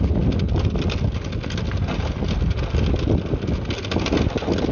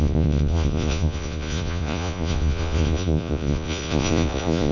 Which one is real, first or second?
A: first